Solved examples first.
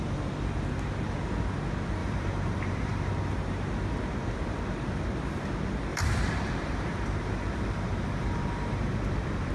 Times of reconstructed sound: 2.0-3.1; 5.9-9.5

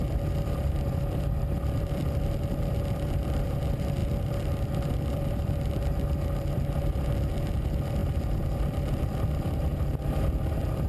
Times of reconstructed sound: 0.0-9.7

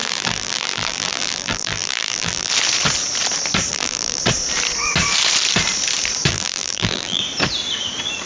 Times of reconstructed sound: 0.0-2.5; 3.7-4.2; 6.3-7.2